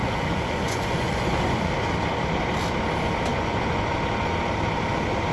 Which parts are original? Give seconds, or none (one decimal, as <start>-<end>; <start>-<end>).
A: 1.7-3.3; 3.9-5.3